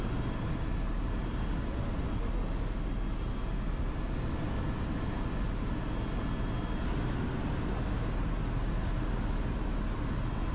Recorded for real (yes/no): yes